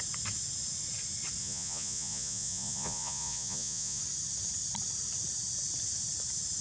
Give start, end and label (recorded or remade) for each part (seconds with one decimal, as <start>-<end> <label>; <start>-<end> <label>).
0.0-1.4 recorded; 1.4-4.0 remade; 4.0-6.6 recorded